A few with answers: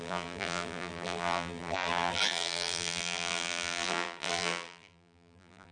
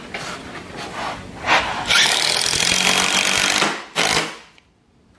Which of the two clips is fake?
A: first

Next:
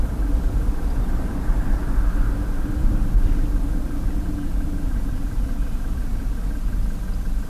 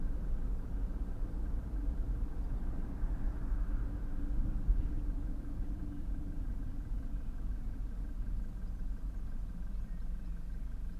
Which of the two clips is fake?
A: first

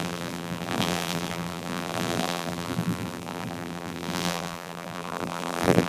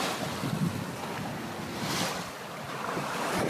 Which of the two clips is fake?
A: first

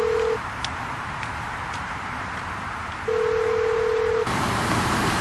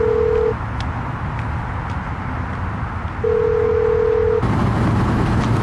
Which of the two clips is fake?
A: first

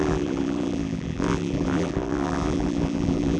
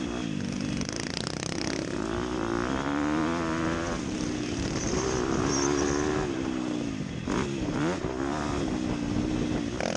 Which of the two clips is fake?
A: first